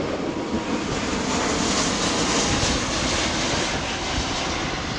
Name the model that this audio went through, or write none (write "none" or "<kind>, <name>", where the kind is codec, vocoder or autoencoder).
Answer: none